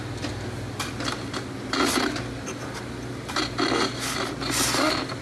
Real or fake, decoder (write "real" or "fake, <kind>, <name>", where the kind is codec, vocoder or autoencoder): real